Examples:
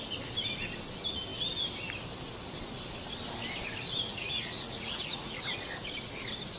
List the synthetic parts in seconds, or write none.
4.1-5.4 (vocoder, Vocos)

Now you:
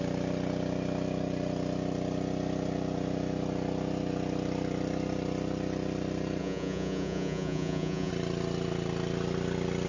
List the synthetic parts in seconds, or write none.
6.4-8.1 (vocoder, Vocos)